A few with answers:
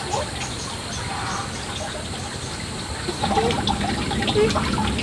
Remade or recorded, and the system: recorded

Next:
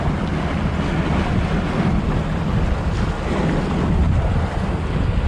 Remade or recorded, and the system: recorded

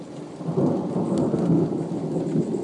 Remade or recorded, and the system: recorded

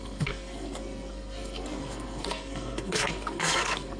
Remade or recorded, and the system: remade, codec, SNAC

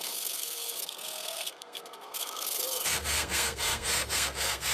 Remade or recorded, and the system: remade, codec, SNAC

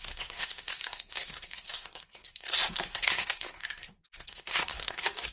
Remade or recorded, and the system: remade, codec, SNAC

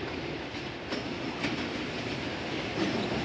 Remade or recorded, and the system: recorded